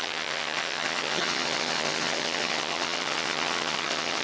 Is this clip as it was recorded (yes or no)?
no